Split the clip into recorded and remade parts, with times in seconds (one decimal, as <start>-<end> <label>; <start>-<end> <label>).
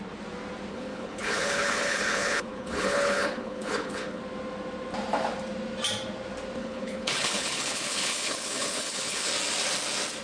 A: 0.0-0.7 recorded; 0.7-4.2 remade; 4.2-6.6 recorded; 6.6-9.3 remade; 9.3-10.2 recorded